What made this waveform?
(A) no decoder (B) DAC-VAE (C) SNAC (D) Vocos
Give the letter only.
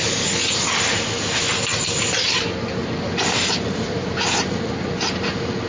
A